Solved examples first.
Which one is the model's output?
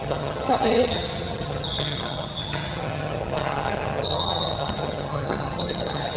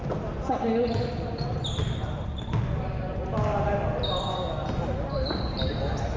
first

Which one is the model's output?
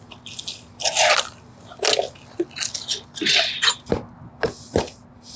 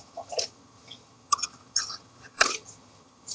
second